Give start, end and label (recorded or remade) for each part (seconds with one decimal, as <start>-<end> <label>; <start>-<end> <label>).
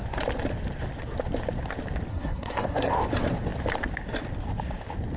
0.0-2.1 recorded; 2.1-2.9 remade; 2.9-5.2 recorded